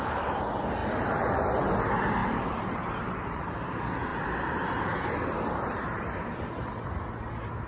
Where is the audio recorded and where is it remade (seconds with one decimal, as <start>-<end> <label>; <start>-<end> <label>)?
0.0-0.8 recorded; 0.8-1.7 remade; 1.7-2.2 recorded; 2.2-3.5 remade; 3.5-7.7 recorded